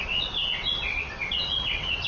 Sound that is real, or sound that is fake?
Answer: fake